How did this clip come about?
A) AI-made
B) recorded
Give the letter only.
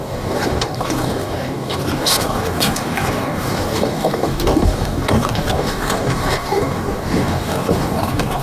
A